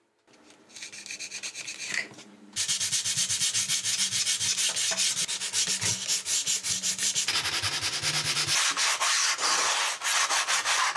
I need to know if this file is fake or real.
real